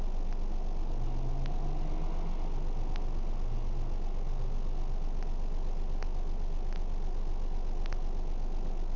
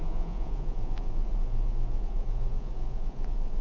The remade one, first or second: second